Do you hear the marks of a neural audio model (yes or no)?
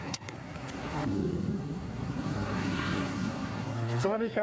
yes